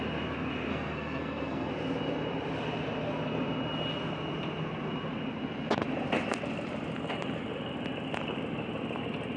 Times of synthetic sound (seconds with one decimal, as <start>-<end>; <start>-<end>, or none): 0.7-1.7